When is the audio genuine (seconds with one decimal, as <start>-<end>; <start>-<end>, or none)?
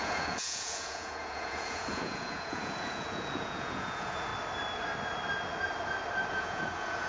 4.3-6.3